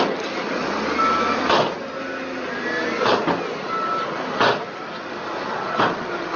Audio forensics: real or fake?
real